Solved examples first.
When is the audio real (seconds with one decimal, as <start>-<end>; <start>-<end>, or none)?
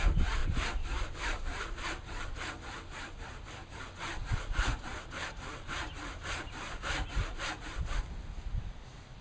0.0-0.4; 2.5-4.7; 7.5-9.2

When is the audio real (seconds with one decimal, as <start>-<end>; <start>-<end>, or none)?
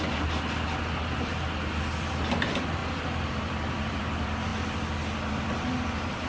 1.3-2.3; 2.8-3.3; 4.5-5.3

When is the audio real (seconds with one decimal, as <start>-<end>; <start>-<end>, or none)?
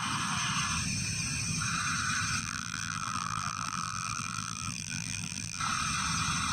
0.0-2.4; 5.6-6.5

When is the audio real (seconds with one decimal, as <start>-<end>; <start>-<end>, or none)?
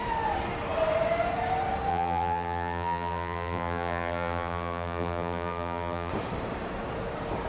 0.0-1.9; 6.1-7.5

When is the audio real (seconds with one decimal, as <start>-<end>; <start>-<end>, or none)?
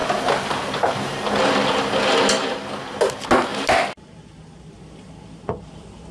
0.0-3.5; 4.8-6.1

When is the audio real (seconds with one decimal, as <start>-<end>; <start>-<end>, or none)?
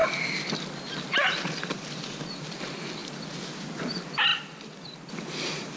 0.0-1.2; 3.0-3.9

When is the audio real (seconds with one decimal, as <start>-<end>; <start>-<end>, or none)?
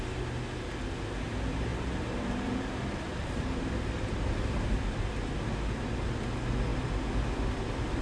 0.0-1.7; 3.7-8.0